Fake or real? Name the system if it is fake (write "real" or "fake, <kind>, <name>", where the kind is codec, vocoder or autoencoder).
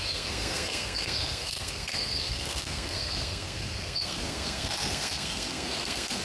fake, codec, SNAC